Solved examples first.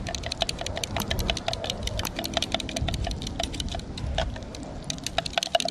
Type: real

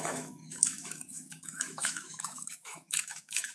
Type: fake